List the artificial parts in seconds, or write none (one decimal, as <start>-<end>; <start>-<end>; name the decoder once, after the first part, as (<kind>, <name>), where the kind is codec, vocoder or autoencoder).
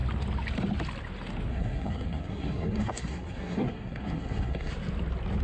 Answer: 1.5-4.7 (codec, SNAC)